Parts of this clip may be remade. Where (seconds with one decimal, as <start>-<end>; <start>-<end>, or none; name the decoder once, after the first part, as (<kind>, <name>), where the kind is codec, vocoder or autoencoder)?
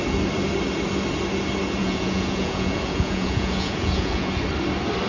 1.8-4.4 (vocoder, Vocos)